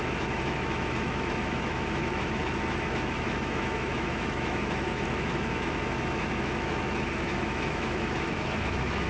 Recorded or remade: remade